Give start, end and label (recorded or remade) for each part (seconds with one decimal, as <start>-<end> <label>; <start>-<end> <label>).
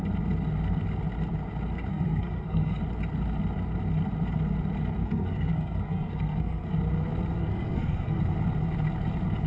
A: 0.0-1.9 recorded; 1.9-2.8 remade; 2.8-5.0 recorded; 5.0-6.7 remade; 6.7-7.4 recorded; 7.4-8.2 remade; 8.2-9.5 recorded